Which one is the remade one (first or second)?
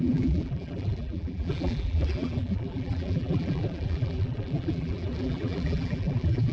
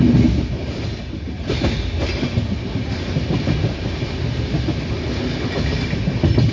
first